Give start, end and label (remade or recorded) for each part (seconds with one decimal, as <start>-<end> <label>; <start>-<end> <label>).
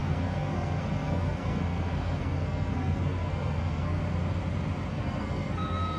0.0-4.0 remade; 4.0-4.9 recorded; 4.9-6.0 remade